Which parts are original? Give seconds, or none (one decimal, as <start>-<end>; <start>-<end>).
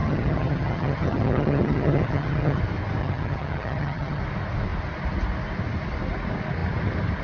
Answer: 2.6-3.0; 4.2-7.2